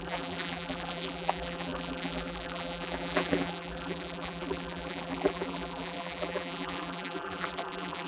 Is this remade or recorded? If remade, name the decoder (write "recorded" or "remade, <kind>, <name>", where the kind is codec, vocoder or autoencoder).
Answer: remade, vocoder, BigVGAN v2